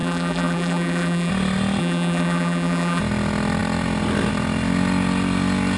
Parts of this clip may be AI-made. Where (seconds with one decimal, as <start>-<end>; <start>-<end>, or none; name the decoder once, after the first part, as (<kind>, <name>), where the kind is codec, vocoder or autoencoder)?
0.0-1.3 (vocoder, BigVGAN v2); 1.8-3.0